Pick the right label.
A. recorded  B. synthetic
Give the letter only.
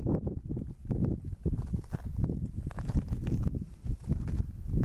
A